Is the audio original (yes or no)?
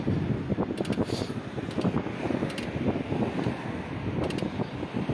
yes